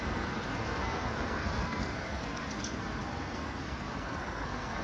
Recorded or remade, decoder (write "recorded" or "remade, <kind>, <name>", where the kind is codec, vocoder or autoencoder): remade, codec, SNAC